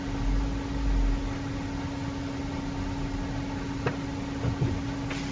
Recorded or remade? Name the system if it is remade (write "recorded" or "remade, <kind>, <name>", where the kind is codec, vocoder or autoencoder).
recorded